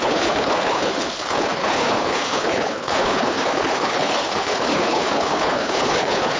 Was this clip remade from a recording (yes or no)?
yes